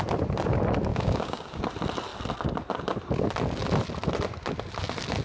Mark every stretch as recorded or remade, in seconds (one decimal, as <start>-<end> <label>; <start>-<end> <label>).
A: 0.0-0.9 recorded; 0.9-1.6 remade; 1.6-5.2 recorded